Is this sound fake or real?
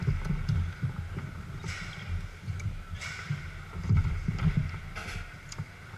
real